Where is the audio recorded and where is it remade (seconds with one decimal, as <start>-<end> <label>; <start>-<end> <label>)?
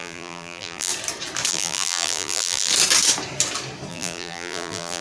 0.0-0.9 remade; 0.9-1.5 recorded; 1.5-2.7 remade; 2.7-3.9 recorded; 3.9-5.0 remade